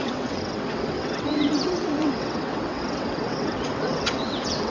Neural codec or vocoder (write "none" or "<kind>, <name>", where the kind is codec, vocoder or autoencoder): vocoder, WaveNeXt